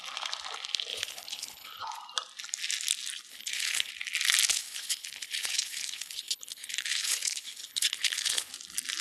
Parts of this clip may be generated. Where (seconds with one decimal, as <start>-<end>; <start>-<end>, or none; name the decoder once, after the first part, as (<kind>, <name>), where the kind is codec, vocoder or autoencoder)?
0.9-1.8 (codec, HILCodec); 3.3-3.9; 4.5-8.5